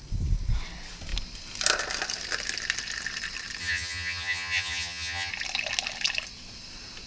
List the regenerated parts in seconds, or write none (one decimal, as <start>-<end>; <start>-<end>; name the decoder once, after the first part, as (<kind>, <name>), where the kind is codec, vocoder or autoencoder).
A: 3.6-5.3 (vocoder, HiFi-GAN)